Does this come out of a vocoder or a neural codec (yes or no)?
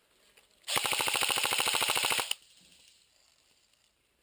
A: no